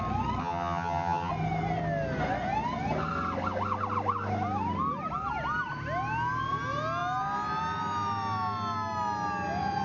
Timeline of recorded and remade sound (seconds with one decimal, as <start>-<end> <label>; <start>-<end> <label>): 0.0-0.4 recorded; 0.4-1.3 remade; 1.3-9.8 recorded